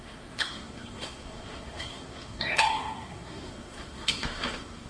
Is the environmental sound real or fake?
fake